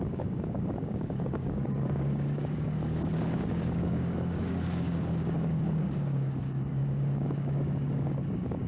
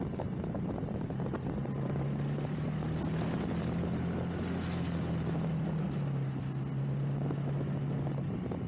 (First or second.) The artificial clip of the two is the first